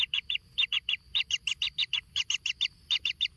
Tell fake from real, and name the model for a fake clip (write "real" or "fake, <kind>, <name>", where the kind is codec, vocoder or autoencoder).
real